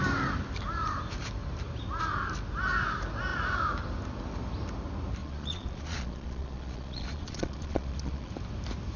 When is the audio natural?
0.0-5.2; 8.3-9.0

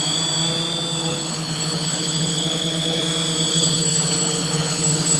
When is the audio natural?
0.0-1.0; 3.0-3.5

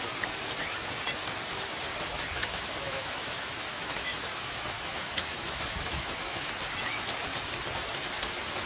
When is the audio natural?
0.0-2.4; 6.5-8.7